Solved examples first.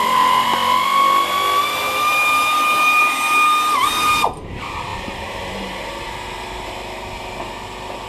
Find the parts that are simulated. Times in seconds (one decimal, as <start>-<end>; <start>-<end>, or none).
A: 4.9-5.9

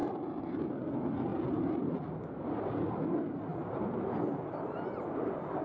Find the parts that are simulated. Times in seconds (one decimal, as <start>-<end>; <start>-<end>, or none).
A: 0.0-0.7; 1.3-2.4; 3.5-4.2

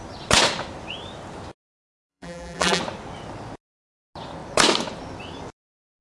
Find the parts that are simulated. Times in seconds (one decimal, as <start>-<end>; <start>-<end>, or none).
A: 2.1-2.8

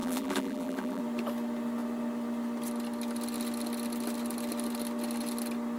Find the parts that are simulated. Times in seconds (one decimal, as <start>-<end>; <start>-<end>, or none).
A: 0.0-1.0

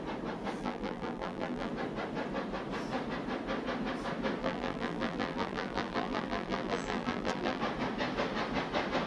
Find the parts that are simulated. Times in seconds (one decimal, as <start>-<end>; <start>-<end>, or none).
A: 0.6-1.7; 4.4-7.6

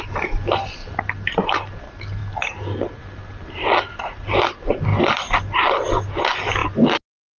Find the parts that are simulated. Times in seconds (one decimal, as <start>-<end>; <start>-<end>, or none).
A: 0.0-0.8; 1.4-2.2; 3.0-4.9; 5.4-6.6